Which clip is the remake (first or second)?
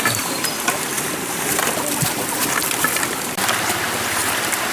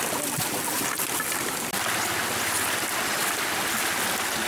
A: first